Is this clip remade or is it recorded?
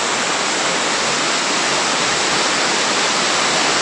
recorded